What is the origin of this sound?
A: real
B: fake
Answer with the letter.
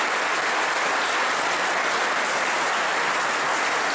A